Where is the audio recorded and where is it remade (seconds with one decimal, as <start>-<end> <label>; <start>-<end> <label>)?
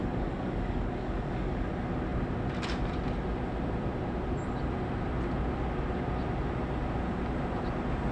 0.0-1.7 remade; 1.7-8.1 recorded